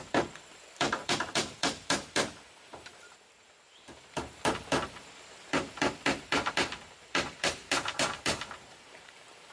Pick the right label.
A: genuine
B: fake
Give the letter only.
B